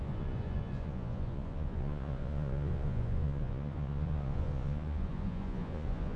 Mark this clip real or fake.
fake